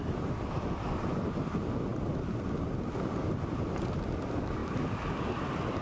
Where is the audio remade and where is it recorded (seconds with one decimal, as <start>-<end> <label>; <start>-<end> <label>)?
0.0-4.6 recorded; 4.6-5.8 remade